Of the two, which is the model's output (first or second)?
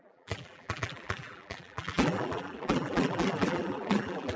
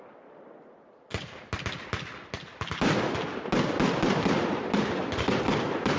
first